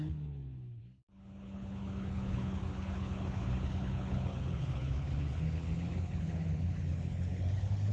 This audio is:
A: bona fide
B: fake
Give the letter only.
B